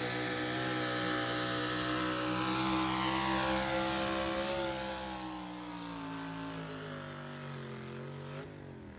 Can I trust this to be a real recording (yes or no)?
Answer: yes